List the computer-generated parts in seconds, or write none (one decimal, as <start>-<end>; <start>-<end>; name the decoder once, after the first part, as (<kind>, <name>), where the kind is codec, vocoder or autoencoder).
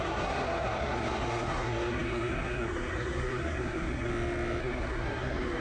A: 0.0-4.1 (codec, SNAC); 4.6-5.6